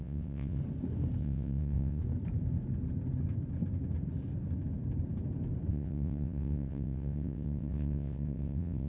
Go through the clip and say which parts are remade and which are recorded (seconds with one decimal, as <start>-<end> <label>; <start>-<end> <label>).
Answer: 0.0-0.6 remade; 0.6-1.2 recorded; 1.2-2.0 remade; 2.0-5.7 recorded; 5.7-8.9 remade